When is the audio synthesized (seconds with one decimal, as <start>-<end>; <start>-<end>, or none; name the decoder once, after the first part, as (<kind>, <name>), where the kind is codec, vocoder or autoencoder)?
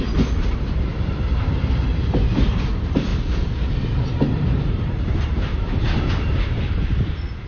0.0-3.1 (vocoder, BigVGAN v2); 4.3-7.5